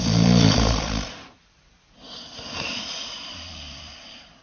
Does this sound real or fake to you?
fake